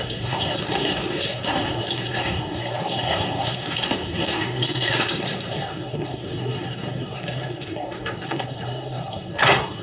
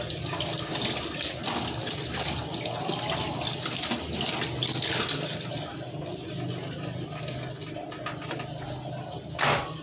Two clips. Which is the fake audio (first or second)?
first